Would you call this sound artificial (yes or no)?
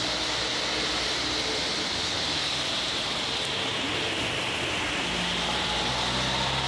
no